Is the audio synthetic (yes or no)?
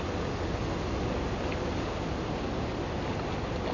no